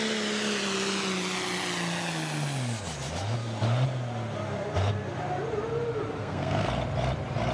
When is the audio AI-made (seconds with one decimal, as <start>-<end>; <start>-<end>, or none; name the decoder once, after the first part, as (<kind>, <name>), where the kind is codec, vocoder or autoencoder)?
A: 6.2-6.7 (codec, SNAC)